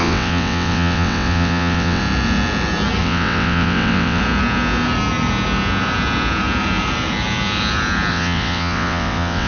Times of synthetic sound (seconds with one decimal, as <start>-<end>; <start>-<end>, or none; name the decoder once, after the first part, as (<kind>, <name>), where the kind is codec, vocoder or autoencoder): 0.0-2.0 (vocoder, WaveNeXt); 3.0-4.2; 8.1-9.5